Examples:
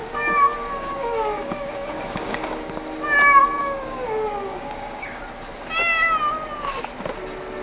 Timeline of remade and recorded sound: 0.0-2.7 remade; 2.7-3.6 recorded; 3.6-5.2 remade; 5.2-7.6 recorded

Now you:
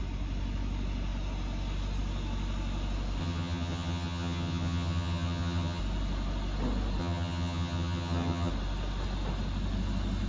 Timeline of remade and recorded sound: 0.0-3.2 recorded; 3.2-5.8 remade; 5.8-7.0 recorded; 7.0-8.5 remade; 8.5-10.3 recorded